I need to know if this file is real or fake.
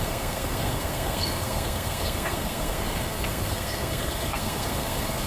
fake